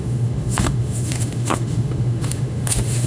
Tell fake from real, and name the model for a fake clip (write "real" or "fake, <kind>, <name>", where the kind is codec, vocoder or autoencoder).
fake, autoencoder, DAC-VAE